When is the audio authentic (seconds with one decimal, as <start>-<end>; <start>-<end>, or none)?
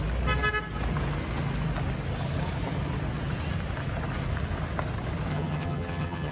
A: 0.0-5.3